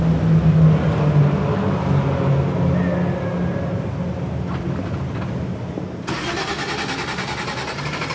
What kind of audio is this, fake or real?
real